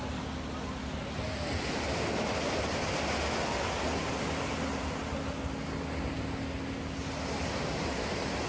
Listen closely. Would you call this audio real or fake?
real